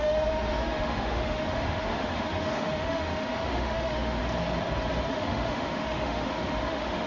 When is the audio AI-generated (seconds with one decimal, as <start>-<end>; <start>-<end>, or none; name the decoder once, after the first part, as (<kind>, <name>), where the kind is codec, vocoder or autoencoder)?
0.0-4.2 (autoencoder, DAC-VAE); 5.1-7.1